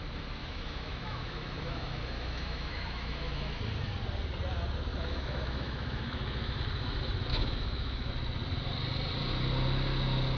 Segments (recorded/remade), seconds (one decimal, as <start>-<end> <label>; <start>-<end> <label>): 0.0-0.4 recorded; 0.4-3.6 remade; 3.6-4.9 recorded; 4.9-6.6 remade; 6.6-7.3 recorded; 7.3-8.1 remade; 8.1-10.4 recorded